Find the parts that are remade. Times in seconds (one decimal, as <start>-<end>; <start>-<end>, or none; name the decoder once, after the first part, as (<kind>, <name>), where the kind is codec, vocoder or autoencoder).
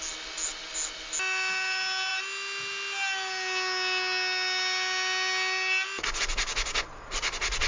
none